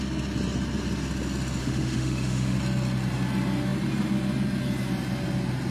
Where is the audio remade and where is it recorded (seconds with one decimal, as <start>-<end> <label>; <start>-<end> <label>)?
0.0-1.6 recorded; 1.6-2.6 remade; 2.6-5.7 recorded